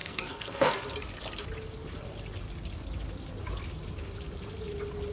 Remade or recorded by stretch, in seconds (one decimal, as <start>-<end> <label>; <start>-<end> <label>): 0.0-0.7 remade; 0.7-5.1 recorded